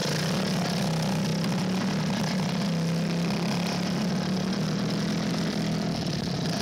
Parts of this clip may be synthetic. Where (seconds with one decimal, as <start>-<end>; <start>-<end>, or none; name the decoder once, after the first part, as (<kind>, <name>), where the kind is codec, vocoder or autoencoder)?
none